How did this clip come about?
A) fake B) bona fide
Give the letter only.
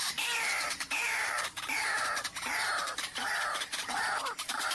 A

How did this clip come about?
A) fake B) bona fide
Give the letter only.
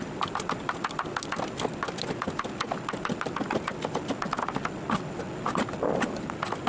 B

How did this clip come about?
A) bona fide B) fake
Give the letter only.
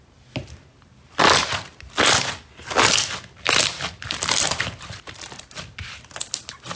A